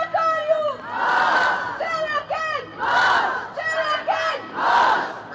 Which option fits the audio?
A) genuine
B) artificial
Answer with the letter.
A